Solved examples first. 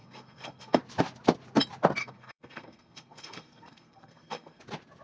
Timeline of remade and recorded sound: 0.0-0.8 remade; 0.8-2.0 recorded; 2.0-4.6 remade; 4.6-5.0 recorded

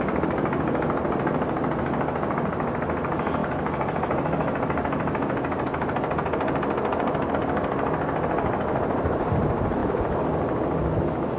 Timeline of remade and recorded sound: 0.0-11.4 recorded

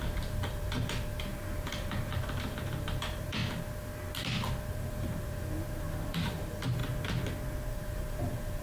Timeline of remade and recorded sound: 0.0-3.4 remade; 3.4-4.7 recorded; 4.7-6.8 remade; 6.8-7.7 recorded; 7.7-8.6 remade